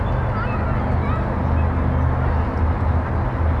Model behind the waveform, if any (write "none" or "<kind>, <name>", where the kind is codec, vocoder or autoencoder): none